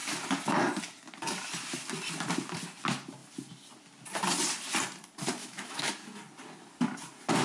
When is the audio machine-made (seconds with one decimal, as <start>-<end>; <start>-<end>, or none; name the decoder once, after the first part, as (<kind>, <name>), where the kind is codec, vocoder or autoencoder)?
5.4-5.9 (autoencoder, DAC-VAE)